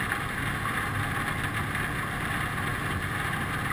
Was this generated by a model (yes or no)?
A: no